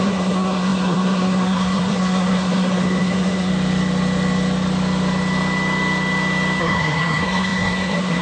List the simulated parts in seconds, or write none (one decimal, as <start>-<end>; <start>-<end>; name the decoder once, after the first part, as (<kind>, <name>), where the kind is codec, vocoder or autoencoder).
0.0-3.5 (codec, SNAC); 6.6-8.2